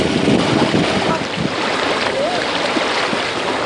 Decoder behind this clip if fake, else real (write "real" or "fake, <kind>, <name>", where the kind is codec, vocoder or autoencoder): real